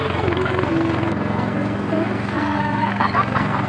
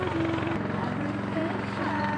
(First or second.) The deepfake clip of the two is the first